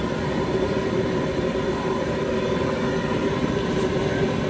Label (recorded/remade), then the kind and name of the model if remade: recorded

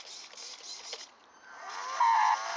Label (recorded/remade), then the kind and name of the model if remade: recorded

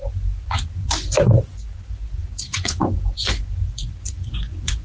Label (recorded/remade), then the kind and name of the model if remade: remade, vocoder, Vocos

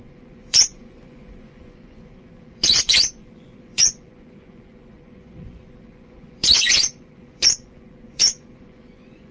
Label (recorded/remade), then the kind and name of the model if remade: remade, vocoder, Vocos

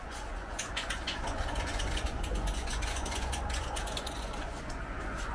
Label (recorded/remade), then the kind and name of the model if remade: remade, vocoder, Vocos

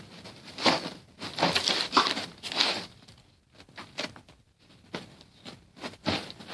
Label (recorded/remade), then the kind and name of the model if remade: recorded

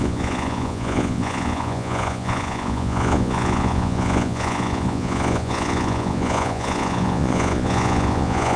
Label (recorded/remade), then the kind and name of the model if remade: remade, vocoder, Vocos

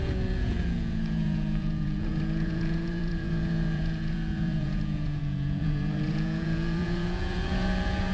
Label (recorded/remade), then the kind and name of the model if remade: remade, vocoder, Vocos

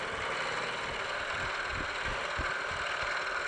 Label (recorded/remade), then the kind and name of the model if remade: recorded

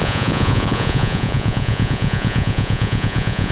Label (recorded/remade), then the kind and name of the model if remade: remade, vocoder, Vocos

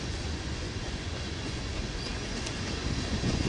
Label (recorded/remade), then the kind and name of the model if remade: remade, vocoder, Vocos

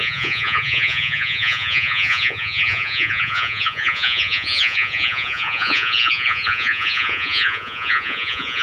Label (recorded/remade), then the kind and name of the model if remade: remade, vocoder, Vocos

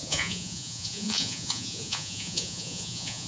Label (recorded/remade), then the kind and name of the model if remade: remade, vocoder, Vocos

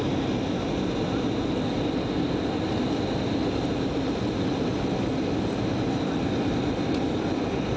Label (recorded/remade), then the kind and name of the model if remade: recorded